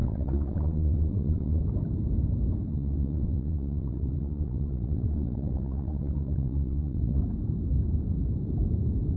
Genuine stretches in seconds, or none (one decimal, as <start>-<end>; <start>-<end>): 1.6-2.7; 7.2-9.2